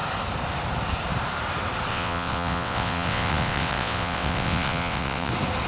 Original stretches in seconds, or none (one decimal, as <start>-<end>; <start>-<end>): 0.0-1.9; 5.3-5.7